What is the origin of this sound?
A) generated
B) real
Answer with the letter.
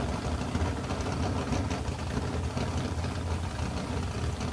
B